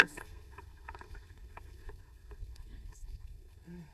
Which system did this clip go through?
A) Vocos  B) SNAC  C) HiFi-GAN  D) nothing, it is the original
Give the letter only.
B